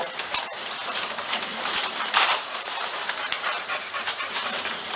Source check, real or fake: fake